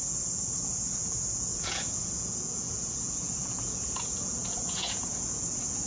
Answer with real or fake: fake